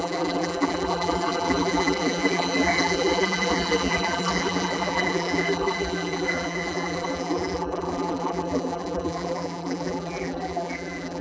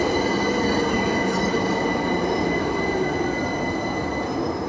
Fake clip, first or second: first